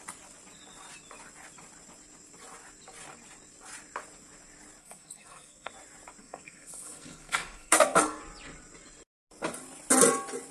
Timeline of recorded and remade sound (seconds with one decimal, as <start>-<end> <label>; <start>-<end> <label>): 0.0-4.8 recorded; 4.8-5.7 remade; 5.7-6.2 recorded; 6.2-8.2 remade; 8.2-10.5 recorded